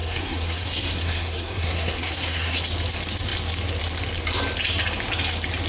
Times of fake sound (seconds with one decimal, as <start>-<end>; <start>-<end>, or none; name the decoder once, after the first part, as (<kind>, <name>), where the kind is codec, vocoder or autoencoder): 0.0-2.6 (codec, SNAC)